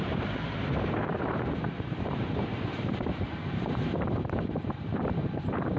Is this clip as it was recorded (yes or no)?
no